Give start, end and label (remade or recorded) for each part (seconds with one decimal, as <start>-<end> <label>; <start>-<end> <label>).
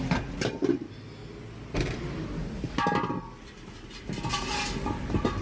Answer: 0.0-5.4 recorded